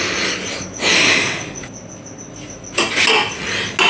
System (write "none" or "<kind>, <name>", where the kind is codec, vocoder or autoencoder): none